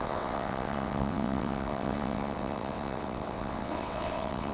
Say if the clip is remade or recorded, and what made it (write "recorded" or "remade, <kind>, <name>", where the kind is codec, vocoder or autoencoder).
remade, vocoder, WaveNeXt